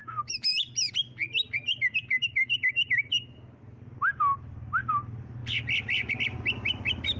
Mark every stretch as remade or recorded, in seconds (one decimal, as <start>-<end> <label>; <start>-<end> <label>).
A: 0.0-0.6 remade; 0.6-2.2 recorded; 2.2-3.8 remade; 3.8-7.2 recorded